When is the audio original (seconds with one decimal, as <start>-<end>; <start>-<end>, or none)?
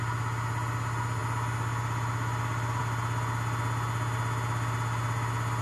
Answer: 0.0-5.6